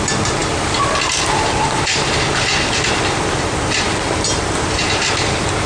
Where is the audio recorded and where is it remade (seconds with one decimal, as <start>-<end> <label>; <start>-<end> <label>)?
0.0-5.7 recorded